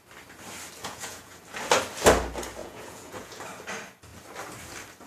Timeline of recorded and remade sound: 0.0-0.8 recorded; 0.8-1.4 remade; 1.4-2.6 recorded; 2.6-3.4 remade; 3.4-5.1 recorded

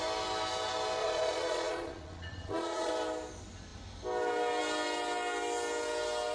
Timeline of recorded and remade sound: 0.0-1.0 recorded; 1.0-2.9 remade; 2.9-6.3 recorded